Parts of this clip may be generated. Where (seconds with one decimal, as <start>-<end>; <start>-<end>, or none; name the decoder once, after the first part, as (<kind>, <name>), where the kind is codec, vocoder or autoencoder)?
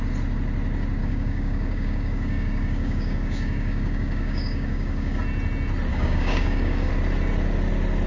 1.0-5.2 (codec, DAC); 5.9-6.9